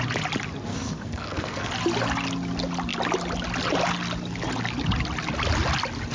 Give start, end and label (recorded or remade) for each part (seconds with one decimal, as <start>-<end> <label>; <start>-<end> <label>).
0.0-0.7 recorded; 0.7-1.7 remade; 1.7-6.1 recorded